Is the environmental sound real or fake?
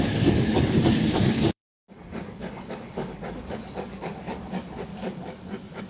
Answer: fake